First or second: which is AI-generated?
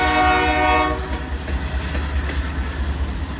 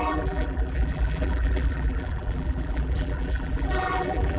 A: second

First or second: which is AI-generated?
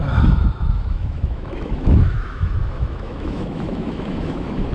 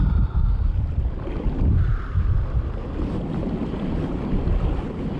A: first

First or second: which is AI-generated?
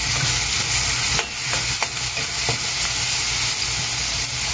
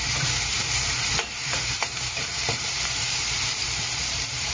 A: second